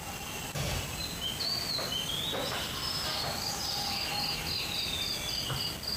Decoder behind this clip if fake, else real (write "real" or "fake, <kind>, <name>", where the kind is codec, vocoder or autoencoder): real